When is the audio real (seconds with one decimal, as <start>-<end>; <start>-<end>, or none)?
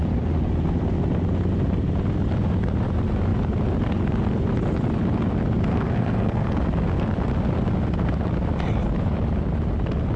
0.0-5.7; 6.6-10.2